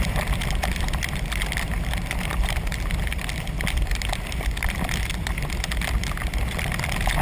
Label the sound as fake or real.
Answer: fake